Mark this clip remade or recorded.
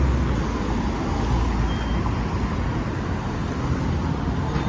recorded